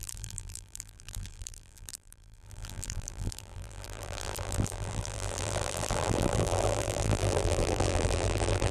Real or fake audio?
fake